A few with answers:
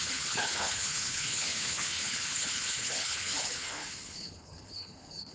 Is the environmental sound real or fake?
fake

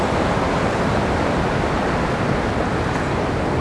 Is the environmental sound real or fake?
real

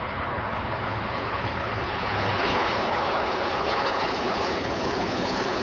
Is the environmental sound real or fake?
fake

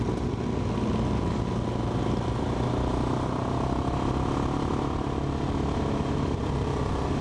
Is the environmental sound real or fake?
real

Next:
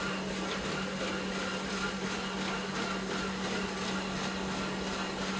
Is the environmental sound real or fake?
real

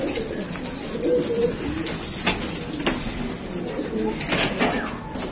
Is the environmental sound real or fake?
real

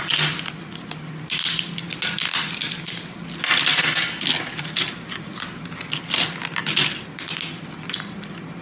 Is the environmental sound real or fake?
real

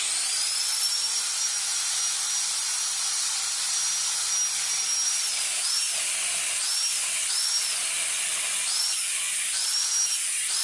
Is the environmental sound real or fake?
real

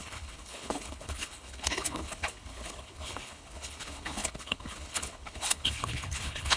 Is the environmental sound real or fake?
fake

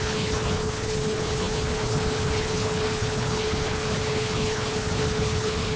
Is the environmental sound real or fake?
fake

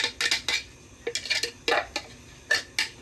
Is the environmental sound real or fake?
real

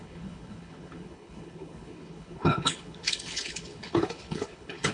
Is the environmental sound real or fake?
fake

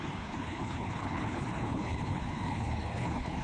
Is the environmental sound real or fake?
fake